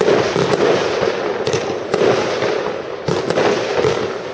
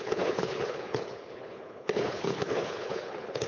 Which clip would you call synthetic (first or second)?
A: second